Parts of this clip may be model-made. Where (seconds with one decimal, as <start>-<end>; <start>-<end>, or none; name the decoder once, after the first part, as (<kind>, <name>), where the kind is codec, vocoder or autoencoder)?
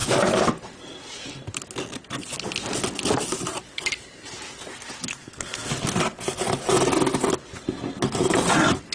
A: 5.1-5.7 (codec, SNAC)